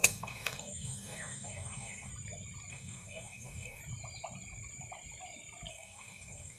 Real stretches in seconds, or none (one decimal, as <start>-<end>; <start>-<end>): 2.1-2.7; 3.8-5.7